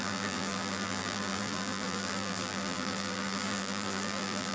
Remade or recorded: remade